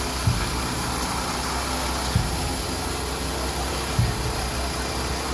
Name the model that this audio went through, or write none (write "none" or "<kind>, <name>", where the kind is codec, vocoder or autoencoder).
none